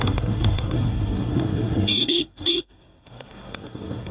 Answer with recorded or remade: remade